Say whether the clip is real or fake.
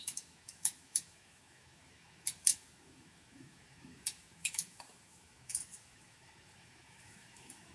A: fake